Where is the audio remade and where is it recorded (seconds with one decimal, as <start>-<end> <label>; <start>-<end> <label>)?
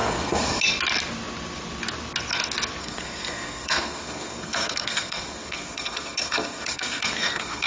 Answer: 0.0-0.6 remade; 0.6-2.8 recorded; 2.8-7.7 remade